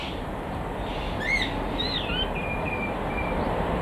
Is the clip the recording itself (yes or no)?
no